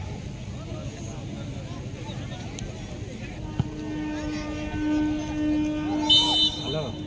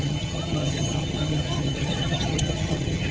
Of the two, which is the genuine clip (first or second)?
first